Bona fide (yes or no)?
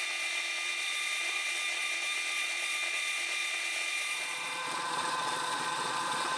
no